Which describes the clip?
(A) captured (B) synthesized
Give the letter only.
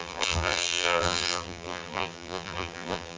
B